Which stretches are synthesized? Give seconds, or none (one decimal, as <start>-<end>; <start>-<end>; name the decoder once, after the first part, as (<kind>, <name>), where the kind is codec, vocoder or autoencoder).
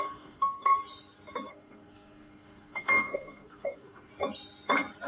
0.0-0.8 (codec, SNAC); 1.5-4.1